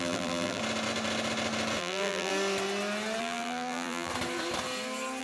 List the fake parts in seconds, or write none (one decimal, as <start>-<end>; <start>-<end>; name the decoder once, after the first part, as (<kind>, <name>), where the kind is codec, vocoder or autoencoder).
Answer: 0.0-0.6 (vocoder, BigVGAN v2); 1.8-2.3; 3.2-4.1